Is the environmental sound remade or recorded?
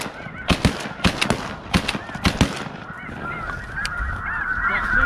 recorded